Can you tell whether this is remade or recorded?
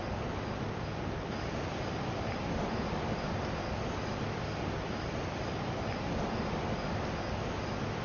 recorded